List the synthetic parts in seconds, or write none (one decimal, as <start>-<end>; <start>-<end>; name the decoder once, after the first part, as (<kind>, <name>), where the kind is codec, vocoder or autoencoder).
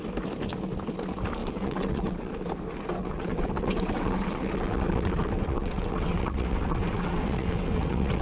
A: 1.4-2.3 (vocoder, WaveNeXt); 3.0-8.2